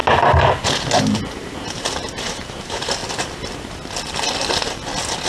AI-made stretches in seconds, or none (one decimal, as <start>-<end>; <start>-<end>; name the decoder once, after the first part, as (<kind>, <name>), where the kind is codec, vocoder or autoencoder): 1.0-3.0 (vocoder, BigVGAN v2)